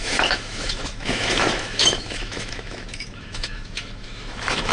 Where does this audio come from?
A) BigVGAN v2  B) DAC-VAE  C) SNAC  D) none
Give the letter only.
B